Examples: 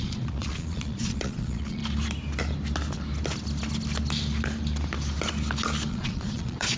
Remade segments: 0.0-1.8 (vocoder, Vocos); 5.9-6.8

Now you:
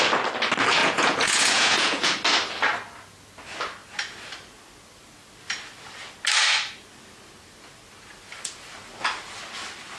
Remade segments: 0.8-2.1 (vocoder, Vocos)

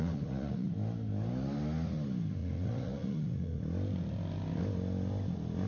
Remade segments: 0.0-0.7 (vocoder, Vocos); 2.4-3.6

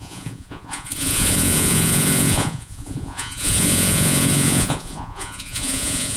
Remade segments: 0.0-6.2 (vocoder, Vocos)

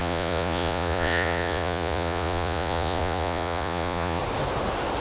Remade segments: 0.0-4.2 (vocoder, Vocos)

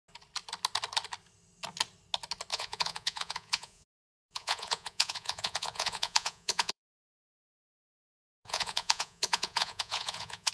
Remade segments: 2.5-7.0 (vocoder, Vocos); 7.8-10.5